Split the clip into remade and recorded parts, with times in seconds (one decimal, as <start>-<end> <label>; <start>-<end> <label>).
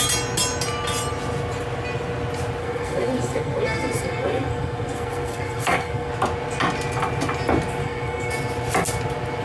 0.0-2.6 recorded; 2.6-6.1 remade; 6.1-7.8 recorded; 7.8-8.3 remade; 8.3-9.4 recorded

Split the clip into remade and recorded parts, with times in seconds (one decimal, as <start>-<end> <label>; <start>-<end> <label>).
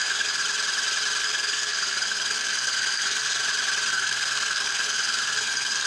0.0-0.4 remade; 0.4-1.2 recorded; 1.2-3.4 remade; 3.4-3.9 recorded; 3.9-5.9 remade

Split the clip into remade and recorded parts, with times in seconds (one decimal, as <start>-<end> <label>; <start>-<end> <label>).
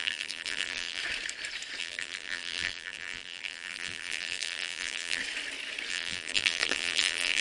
0.0-1.0 remade; 1.0-1.8 recorded; 1.8-5.2 remade; 5.2-5.9 recorded; 5.9-7.4 remade